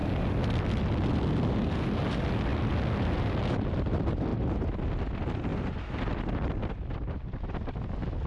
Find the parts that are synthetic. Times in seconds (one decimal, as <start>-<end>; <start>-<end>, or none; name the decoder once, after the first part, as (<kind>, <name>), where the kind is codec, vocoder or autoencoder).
none